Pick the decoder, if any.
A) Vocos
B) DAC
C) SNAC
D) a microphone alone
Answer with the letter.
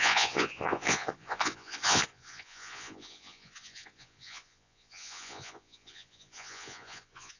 A